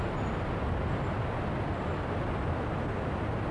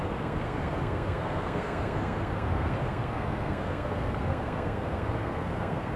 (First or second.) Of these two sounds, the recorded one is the first